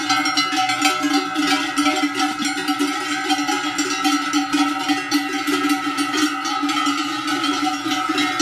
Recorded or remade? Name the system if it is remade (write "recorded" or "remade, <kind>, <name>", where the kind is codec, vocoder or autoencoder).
recorded